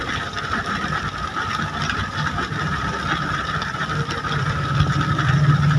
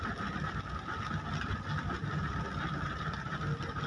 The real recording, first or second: second